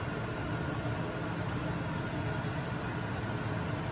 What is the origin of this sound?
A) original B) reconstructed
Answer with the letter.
A